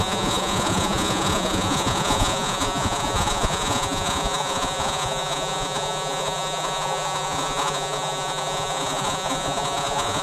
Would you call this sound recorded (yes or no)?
no